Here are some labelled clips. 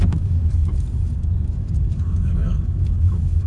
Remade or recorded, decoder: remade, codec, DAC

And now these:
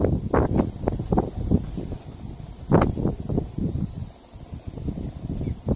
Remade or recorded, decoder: recorded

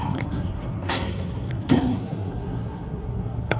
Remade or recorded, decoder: remade, codec, SNAC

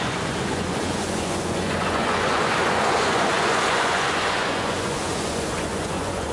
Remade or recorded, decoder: remade, vocoder, Vocos